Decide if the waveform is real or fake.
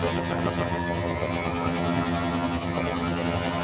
fake